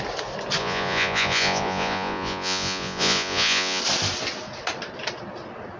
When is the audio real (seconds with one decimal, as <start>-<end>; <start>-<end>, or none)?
0.0-0.6; 3.8-5.8